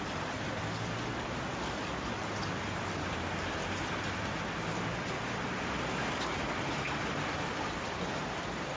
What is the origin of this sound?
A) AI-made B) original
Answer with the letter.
B